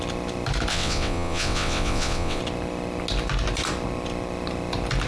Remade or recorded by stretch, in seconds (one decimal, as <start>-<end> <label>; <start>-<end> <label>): 0.0-0.7 recorded; 0.7-2.4 remade; 2.4-5.1 recorded